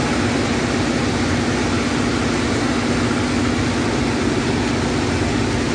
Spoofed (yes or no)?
no